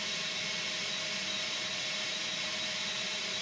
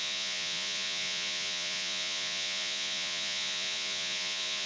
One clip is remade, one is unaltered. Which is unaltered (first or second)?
first